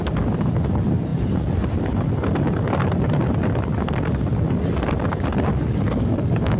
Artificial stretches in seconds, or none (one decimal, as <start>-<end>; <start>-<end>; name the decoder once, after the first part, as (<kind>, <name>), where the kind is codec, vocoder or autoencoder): 5.5-6.6 (codec, DAC)

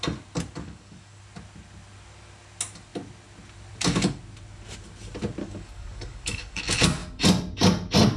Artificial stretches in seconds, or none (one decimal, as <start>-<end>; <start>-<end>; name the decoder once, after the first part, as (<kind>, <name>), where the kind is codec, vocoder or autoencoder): 0.6-1.2 (codec, DAC); 5.4-6.6

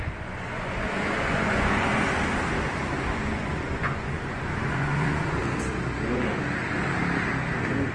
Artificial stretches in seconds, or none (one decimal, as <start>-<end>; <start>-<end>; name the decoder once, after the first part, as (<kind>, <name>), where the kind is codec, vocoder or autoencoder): 0.0-1.9 (vocoder, Vocos); 3.1-5.4

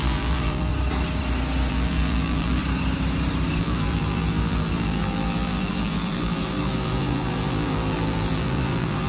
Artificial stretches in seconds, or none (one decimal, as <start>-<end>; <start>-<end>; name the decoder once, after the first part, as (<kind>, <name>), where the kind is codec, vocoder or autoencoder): 0.0-0.7 (vocoder, BigVGAN v2); 1.7-2.6; 3.6-9.1

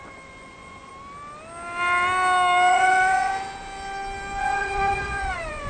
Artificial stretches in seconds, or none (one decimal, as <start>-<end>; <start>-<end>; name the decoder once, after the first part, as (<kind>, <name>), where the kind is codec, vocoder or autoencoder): 0.0-0.9 (vocoder, Vocos); 2.7-3.3; 4.4-5.7

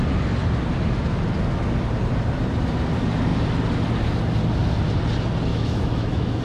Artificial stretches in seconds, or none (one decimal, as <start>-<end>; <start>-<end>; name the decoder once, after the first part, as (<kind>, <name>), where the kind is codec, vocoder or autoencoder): 5.5-6.4 (autoencoder, DAC-VAE)

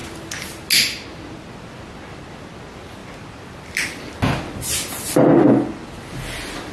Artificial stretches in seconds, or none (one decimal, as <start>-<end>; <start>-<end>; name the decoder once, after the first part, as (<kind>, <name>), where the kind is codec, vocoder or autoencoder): none